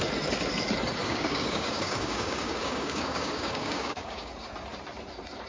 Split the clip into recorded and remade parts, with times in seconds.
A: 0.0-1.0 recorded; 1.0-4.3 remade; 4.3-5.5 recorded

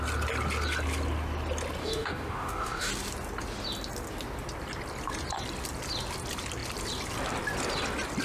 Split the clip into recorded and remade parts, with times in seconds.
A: 0.0-1.8 recorded; 1.8-2.9 remade; 2.9-8.2 recorded

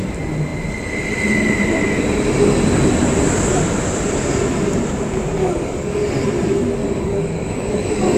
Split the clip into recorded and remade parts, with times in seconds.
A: 0.0-5.4 recorded; 5.4-6.0 remade; 6.0-6.8 recorded; 6.8-8.2 remade

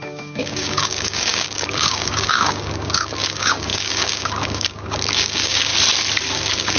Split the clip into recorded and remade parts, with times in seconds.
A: 0.0-5.7 remade; 5.7-6.3 recorded; 6.3-6.8 remade

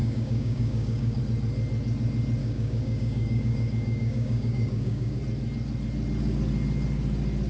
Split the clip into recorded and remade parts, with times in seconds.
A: 0.0-1.2 remade; 1.2-2.4 recorded; 2.4-5.2 remade; 5.2-7.5 recorded

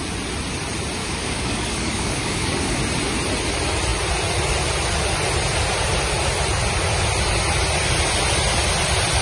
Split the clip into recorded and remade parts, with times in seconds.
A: 0.0-1.0 recorded; 1.0-2.8 remade; 2.8-9.2 recorded

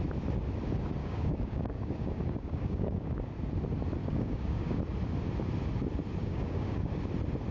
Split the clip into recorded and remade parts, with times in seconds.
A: 0.0-1.0 recorded; 1.0-3.1 remade; 3.1-4.0 recorded; 4.0-4.8 remade; 4.8-6.2 recorded; 6.2-7.0 remade; 7.0-7.5 recorded

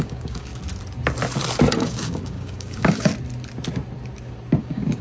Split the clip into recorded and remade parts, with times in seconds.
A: 0.0-0.5 remade; 0.5-1.7 recorded; 1.7-3.1 remade; 3.1-4.6 recorded; 4.6-5.0 remade